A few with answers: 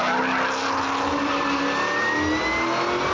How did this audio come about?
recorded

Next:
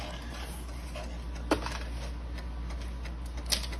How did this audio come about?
recorded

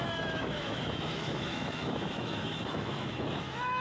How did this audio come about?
remade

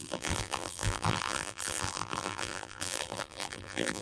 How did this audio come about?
remade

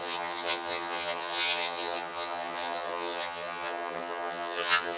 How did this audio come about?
remade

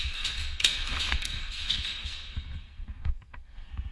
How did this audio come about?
remade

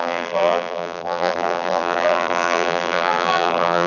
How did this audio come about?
remade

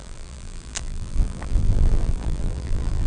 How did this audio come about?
remade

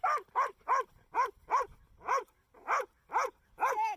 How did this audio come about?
remade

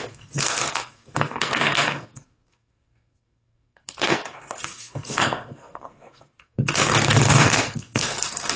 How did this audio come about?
remade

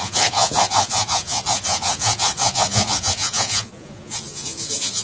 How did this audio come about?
remade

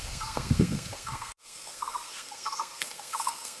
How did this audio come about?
remade